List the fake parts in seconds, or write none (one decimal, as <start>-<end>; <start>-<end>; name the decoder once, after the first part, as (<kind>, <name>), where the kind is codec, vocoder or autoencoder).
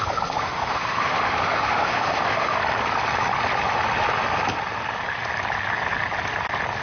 0.0-2.6 (autoencoder, DAC-VAE)